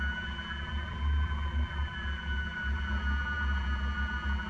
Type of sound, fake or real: fake